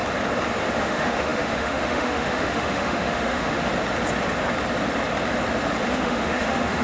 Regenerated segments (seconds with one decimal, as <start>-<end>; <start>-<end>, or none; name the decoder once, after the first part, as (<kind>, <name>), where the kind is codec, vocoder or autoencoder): 0.8-3.7 (autoencoder, DAC-VAE); 5.9-6.8

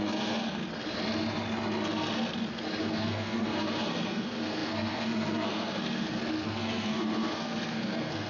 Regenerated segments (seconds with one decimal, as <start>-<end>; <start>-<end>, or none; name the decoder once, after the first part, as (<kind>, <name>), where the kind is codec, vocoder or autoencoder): 0.0-0.6 (codec, SNAC); 2.8-8.3

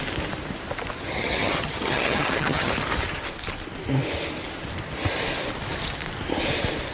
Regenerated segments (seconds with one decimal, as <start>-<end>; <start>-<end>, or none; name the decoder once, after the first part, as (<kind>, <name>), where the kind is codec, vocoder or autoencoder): 1.1-2.7 (vocoder, HiFi-GAN)